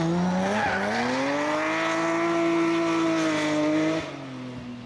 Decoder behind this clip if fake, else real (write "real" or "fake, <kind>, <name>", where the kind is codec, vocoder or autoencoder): real